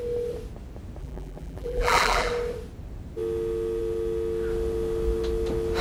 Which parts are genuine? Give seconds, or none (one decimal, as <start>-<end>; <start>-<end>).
0.0-1.0; 2.3-5.8